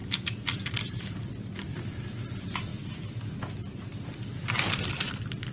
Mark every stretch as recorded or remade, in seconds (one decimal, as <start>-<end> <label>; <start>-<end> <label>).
0.0-5.5 remade